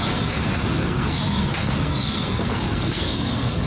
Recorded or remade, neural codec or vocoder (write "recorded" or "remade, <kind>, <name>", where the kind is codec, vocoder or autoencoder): remade, codec, SNAC